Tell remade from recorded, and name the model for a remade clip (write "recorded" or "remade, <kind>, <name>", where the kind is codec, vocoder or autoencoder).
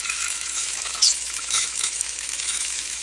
remade, autoencoder, DAC-VAE